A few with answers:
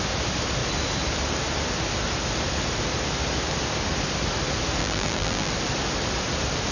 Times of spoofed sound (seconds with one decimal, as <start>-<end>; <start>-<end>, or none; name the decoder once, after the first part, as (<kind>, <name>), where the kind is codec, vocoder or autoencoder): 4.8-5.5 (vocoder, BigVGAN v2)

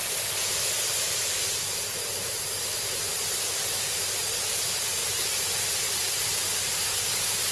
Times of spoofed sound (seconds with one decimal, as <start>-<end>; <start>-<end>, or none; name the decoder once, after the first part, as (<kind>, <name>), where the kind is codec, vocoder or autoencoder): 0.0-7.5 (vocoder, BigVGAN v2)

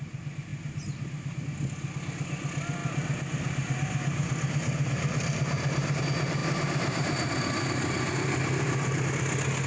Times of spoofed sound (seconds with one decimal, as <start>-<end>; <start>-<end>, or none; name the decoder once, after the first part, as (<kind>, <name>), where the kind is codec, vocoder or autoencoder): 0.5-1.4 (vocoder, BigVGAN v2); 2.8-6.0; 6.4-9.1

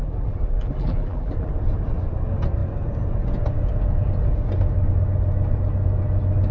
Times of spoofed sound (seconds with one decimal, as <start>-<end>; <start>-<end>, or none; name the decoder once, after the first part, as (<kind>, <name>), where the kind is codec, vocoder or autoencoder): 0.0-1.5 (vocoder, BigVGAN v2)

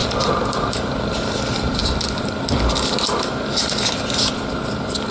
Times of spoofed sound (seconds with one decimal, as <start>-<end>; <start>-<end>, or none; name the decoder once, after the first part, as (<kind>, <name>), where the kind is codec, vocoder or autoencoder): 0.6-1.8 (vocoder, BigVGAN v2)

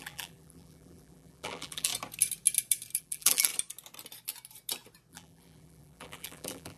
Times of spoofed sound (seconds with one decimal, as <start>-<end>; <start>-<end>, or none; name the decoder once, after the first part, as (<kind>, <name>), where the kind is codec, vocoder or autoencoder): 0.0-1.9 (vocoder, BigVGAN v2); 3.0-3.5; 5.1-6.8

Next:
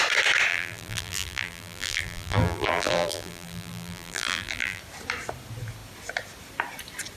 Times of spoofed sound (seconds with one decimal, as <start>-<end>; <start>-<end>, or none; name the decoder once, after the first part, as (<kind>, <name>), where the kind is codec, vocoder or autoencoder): 0.5-4.8 (vocoder, BigVGAN v2)